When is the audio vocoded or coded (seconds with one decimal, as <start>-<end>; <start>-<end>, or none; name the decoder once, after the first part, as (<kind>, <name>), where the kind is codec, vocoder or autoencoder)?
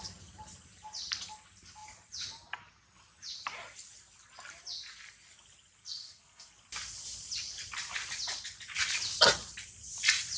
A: 5.8-6.5 (codec, SNAC)